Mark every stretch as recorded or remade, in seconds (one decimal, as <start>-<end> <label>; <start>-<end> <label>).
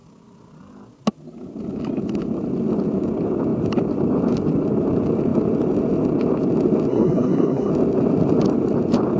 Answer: 0.0-6.9 recorded; 6.9-7.7 remade; 7.7-9.2 recorded